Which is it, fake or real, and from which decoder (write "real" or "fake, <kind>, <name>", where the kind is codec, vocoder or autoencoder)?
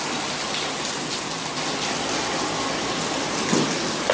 real